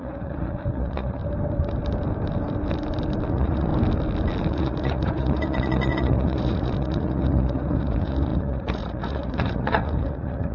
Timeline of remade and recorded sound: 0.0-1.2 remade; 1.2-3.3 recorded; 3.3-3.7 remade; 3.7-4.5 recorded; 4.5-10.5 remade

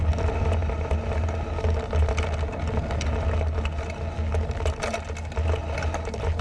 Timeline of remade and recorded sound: 0.0-6.4 recorded